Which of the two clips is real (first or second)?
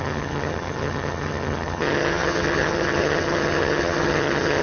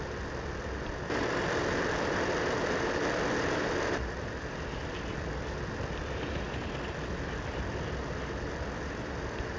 second